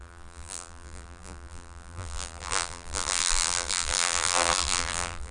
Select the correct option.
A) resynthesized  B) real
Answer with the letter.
A